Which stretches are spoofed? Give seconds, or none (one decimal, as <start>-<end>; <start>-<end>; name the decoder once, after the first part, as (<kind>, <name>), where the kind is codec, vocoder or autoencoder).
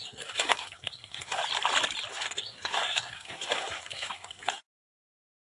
0.0-1.4 (codec, SNAC); 2.1-5.5